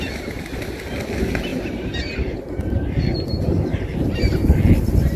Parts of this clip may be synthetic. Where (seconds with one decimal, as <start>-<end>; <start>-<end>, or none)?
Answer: 1.5-4.6